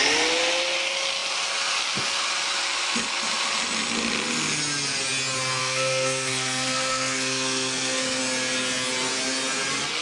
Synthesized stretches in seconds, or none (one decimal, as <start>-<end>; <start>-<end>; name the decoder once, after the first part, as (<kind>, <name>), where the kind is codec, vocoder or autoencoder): 5.6-8.2 (codec, SNAC)